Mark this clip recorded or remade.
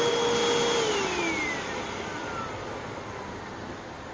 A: recorded